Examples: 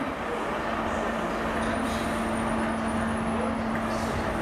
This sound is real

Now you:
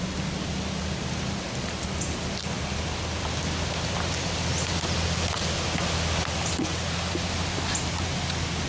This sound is real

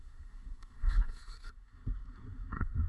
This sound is fake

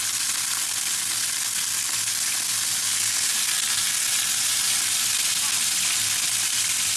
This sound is real